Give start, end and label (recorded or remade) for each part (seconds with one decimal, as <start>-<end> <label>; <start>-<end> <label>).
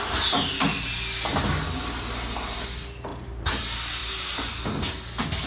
0.0-3.1 recorded; 3.1-3.6 remade; 3.6-4.0 recorded; 4.0-4.6 remade; 4.6-5.5 recorded